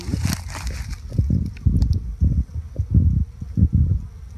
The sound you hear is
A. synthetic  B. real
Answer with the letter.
B